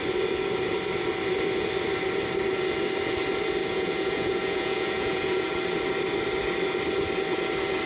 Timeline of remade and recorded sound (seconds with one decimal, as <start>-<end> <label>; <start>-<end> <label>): 0.0-3.6 recorded; 3.6-5.5 remade; 5.5-7.9 recorded